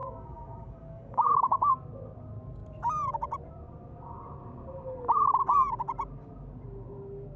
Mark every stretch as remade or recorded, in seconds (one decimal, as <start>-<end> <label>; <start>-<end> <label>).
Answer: 0.0-1.7 remade; 1.7-7.4 recorded